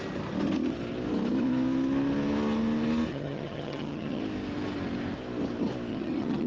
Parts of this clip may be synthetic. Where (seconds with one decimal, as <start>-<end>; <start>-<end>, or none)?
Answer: 3.1-4.2; 5.9-6.5